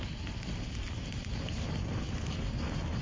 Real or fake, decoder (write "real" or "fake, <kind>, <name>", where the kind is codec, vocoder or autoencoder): real